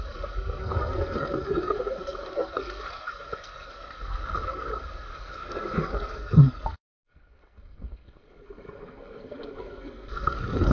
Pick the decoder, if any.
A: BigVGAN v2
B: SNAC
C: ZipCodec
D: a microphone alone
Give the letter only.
B